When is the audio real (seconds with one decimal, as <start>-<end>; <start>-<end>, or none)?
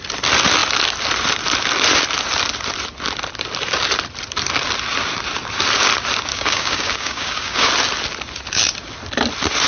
0.0-6.3; 7.7-9.7